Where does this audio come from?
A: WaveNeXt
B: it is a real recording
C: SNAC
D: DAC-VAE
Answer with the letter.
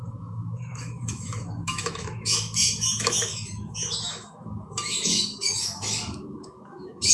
D